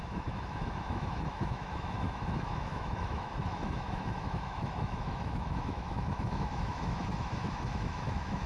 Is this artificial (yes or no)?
yes